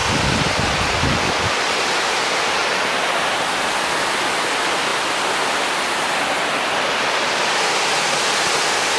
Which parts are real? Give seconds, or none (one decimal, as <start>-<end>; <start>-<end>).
0.0-9.0